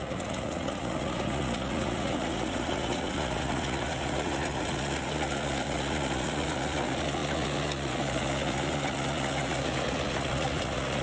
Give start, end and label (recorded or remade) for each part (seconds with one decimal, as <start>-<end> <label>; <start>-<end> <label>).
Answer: 0.0-11.0 remade